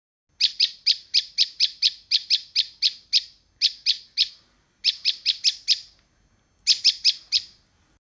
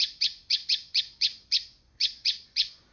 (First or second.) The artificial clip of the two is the second